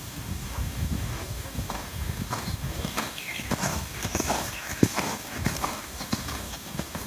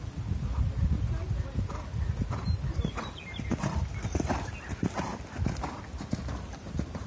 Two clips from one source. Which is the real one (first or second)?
second